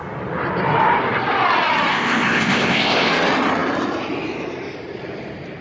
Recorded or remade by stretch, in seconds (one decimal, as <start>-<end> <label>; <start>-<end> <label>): 0.0-1.9 recorded; 1.9-3.1 remade; 3.1-5.6 recorded

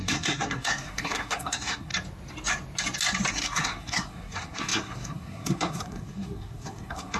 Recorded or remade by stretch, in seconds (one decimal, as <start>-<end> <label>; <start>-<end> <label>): 0.0-1.9 remade; 1.9-3.3 recorded; 3.3-7.2 remade

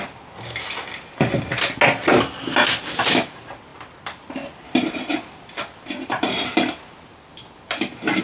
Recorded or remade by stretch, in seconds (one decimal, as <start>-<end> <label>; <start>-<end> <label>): 0.0-8.2 recorded

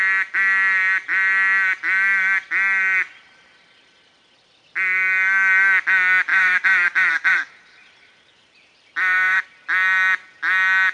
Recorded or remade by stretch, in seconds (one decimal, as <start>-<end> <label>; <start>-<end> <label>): 0.0-6.3 recorded; 6.3-9.4 remade; 9.4-10.9 recorded